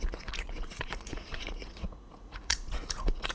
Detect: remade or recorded remade